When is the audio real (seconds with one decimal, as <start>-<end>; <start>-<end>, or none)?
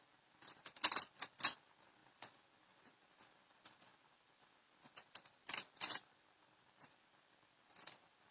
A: 0.0-8.3